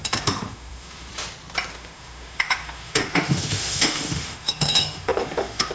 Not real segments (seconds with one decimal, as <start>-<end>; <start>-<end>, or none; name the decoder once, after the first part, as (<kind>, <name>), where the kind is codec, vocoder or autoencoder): 0.0-1.1 (autoencoder, DAC-VAE); 1.7-5.7